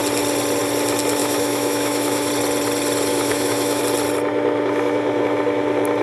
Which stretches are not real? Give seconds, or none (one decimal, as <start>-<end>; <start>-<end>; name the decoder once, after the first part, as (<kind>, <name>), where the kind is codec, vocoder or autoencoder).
1.2-2.3 (autoencoder, DAC-VAE); 3.1-3.8